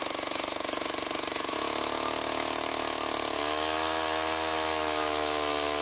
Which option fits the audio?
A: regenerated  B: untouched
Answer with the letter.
A